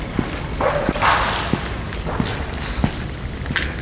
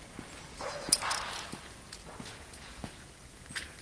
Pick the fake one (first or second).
second